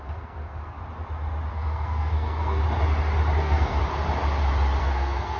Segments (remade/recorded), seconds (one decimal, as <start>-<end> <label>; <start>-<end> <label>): 0.0-0.8 remade; 0.8-1.5 recorded; 1.5-2.6 remade; 2.6-3.4 recorded; 3.4-3.8 remade; 3.8-4.8 recorded; 4.8-5.4 remade